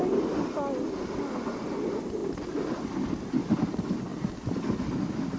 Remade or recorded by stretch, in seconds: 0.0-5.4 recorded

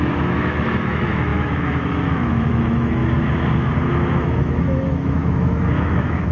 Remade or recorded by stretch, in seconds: 0.0-3.0 remade; 3.0-4.1 recorded; 4.1-6.3 remade

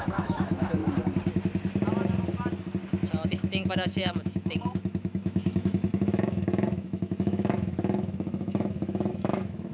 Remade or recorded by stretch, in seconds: 0.0-0.8 remade; 0.8-3.3 recorded; 3.3-9.7 remade